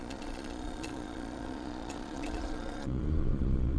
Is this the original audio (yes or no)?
no